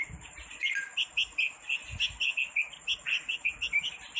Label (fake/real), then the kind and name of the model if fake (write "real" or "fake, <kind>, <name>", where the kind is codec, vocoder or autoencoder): real